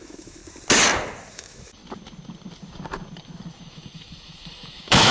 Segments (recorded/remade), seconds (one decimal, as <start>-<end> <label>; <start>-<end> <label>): 0.0-0.4 remade; 0.4-1.3 recorded; 1.3-1.8 remade; 1.8-3.5 recorded; 3.5-5.1 remade